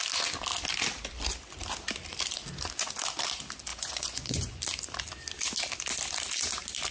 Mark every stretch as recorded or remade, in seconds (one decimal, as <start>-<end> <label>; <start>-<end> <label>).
0.0-3.7 recorded; 3.7-4.6 remade; 4.6-6.9 recorded